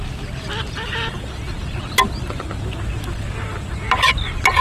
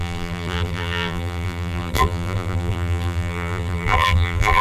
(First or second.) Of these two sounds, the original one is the first